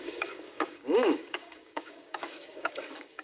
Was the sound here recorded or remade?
remade